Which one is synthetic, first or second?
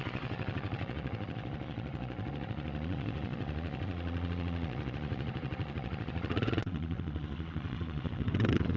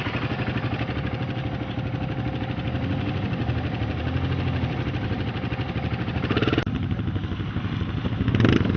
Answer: first